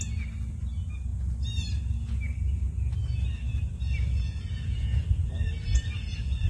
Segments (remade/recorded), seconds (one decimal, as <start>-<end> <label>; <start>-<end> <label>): 0.0-6.5 recorded